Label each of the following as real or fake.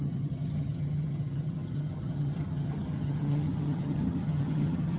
fake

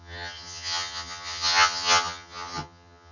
fake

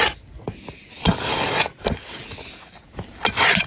real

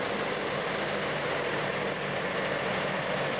real